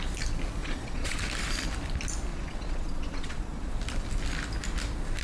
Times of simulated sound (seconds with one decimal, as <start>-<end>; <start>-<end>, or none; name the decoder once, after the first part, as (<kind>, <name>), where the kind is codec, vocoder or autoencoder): 0.6-1.2 (vocoder, Vocos); 2.3-3.7